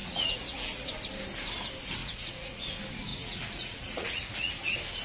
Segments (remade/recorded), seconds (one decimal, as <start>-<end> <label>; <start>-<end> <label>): 0.0-0.9 remade; 0.9-2.0 recorded; 2.0-2.7 remade; 2.7-3.1 recorded; 3.1-4.5 remade; 4.5-5.0 recorded